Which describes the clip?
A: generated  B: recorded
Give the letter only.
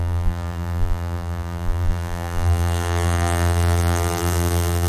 A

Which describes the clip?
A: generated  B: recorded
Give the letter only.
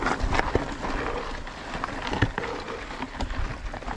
B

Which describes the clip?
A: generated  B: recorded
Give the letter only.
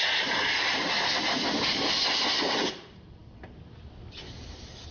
B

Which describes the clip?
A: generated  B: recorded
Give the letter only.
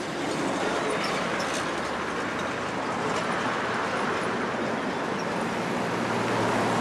B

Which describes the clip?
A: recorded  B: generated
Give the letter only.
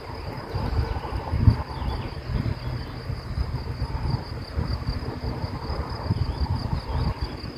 A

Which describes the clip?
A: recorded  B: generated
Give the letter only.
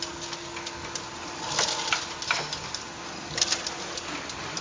A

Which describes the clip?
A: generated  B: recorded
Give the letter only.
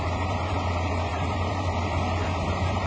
A